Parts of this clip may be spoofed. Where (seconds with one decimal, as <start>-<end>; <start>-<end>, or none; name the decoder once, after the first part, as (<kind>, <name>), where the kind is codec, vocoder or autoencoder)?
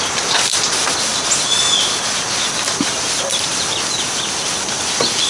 none